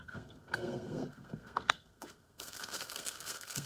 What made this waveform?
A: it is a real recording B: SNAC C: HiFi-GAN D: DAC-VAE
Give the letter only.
B